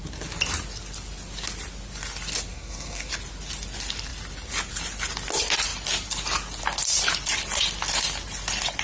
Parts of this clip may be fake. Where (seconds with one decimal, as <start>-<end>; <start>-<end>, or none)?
2.5-3.1